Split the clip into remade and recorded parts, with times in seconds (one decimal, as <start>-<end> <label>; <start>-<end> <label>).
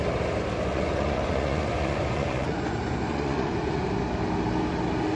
0.0-0.7 recorded; 0.7-3.8 remade; 3.8-5.2 recorded